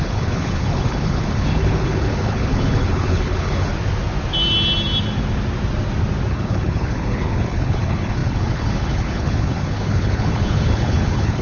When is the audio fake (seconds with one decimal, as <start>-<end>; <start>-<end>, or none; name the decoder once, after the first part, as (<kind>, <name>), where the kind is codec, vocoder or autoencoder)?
0.0-3.7 (codec, HILCodec); 6.3-11.4